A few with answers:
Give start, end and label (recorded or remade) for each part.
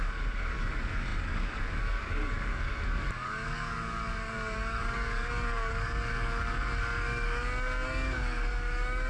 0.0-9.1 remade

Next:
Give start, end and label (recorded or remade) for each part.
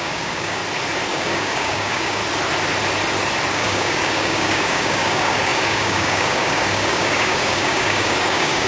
0.0-0.6 remade; 0.6-1.1 recorded; 1.1-2.2 remade; 2.2-3.5 recorded; 3.5-8.7 remade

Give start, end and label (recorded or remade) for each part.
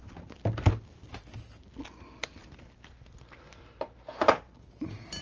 0.0-5.2 recorded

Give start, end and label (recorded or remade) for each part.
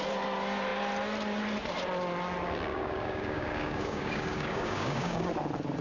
0.0-2.7 recorded; 2.7-5.3 remade; 5.3-5.8 recorded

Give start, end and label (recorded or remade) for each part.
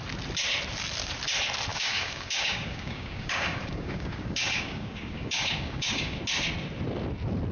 0.0-1.7 recorded; 1.7-6.2 remade; 6.2-7.5 recorded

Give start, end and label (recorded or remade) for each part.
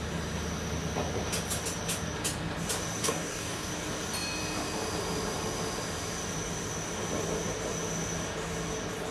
0.0-3.0 recorded; 3.0-3.7 remade; 3.7-9.1 recorded